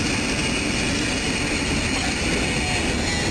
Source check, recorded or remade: recorded